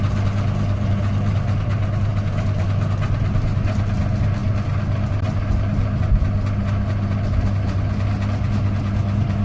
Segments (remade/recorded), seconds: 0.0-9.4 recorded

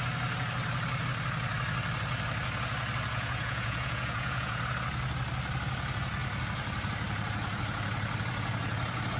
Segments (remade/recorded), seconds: 0.0-3.1 recorded; 3.1-4.6 remade; 4.6-9.2 recorded

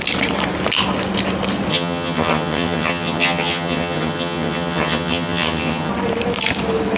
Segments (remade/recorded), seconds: 0.0-1.7 recorded; 1.7-5.9 remade; 5.9-7.0 recorded

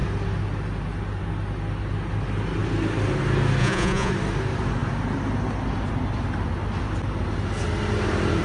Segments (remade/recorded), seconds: 0.0-3.6 recorded; 3.6-4.1 remade; 4.1-8.4 recorded

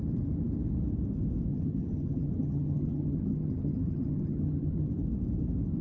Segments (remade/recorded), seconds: 0.0-1.5 recorded; 1.5-4.9 remade; 4.9-5.8 recorded

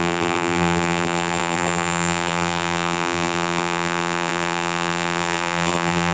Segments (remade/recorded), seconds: 0.0-6.1 remade

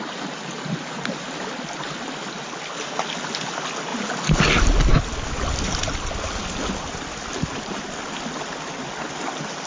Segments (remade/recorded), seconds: 0.0-9.7 recorded

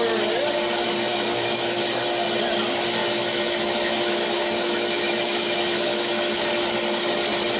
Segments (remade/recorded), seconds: 0.0-1.1 recorded; 1.1-1.9 remade; 1.9-3.0 recorded; 3.0-6.5 remade; 6.5-7.6 recorded